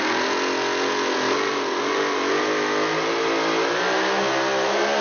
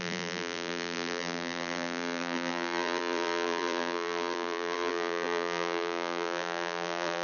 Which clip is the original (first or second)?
first